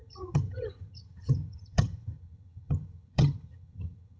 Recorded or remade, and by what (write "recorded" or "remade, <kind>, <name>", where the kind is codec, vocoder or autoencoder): remade, vocoder, HiFi-GAN